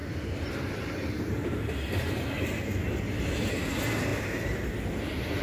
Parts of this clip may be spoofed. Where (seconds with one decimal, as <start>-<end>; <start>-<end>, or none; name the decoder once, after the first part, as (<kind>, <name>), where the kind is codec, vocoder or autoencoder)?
0.0-3.2 (vocoder, BigVGAN v2); 4.1-5.4